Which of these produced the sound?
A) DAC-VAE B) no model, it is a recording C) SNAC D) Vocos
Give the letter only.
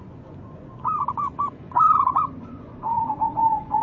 D